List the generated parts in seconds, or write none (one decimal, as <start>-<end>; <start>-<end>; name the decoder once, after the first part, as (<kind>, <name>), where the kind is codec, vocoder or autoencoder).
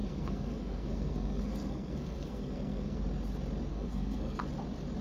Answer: 0.0-3.0 (codec, SNAC); 3.7-4.4